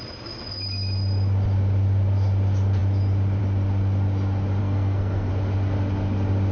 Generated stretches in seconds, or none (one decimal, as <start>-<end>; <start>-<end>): 4.6-5.3